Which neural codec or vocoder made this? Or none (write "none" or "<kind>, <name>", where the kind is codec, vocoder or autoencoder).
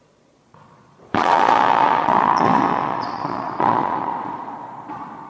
vocoder, Vocos